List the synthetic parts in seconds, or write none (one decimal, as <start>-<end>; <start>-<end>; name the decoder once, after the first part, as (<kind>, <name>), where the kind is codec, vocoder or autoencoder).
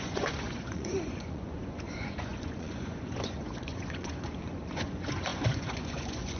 0.0-6.4 (vocoder, Vocos)